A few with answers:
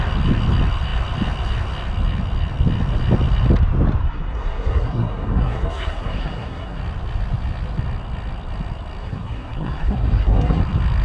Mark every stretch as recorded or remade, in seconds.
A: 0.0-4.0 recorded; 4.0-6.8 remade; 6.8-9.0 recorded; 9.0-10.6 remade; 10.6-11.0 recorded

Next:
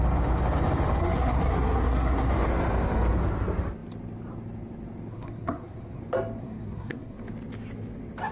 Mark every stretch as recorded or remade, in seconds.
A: 0.0-1.0 recorded; 1.0-2.3 remade; 2.3-5.1 recorded; 5.1-6.0 remade; 6.0-6.4 recorded; 6.4-7.3 remade; 7.3-8.3 recorded

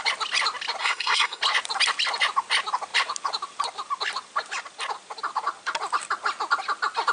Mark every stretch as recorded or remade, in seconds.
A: 0.0-0.8 recorded; 0.8-1.4 remade; 1.4-7.1 recorded